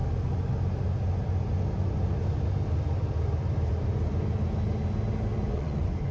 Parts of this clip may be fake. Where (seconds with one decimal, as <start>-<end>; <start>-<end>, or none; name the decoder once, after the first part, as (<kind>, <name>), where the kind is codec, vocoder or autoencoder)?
5.4-6.1 (vocoder, Vocos)